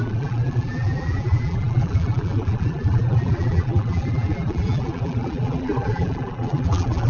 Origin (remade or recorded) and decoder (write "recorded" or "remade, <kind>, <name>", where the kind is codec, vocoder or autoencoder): remade, vocoder, BigVGAN v2